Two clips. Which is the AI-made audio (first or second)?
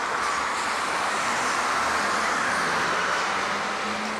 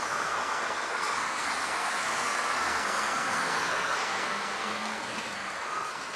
second